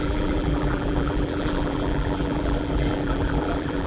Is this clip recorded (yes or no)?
no